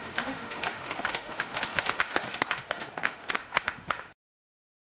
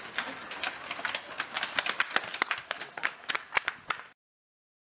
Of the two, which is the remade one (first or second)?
first